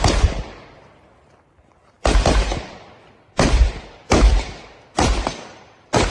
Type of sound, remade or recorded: remade